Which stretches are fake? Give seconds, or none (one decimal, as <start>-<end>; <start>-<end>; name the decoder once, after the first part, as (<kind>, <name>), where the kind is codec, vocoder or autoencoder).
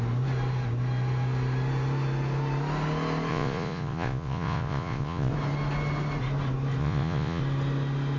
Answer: 3.3-5.3 (vocoder, Vocos); 6.8-7.4